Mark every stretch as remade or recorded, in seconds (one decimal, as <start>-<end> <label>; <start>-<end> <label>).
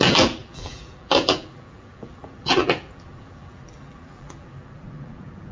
0.0-5.5 remade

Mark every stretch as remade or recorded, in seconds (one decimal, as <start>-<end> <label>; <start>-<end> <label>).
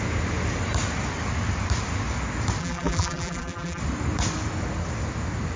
0.0-2.6 recorded; 2.6-3.8 remade; 3.8-5.6 recorded